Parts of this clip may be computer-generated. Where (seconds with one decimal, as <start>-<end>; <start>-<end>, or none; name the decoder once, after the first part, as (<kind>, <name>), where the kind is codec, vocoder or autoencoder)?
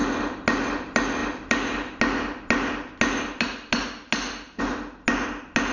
none